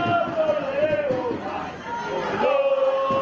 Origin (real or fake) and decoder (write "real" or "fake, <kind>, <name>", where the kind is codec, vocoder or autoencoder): real